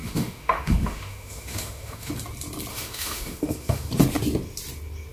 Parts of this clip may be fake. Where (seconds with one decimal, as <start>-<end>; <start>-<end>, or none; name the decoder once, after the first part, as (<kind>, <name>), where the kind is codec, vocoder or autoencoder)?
0.0-2.1 (autoencoder, DAC-VAE); 2.7-3.9